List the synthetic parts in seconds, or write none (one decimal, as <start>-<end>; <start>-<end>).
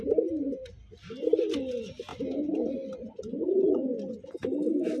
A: none